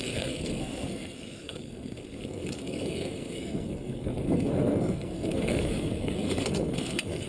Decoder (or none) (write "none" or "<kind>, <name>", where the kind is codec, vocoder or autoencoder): codec, SNAC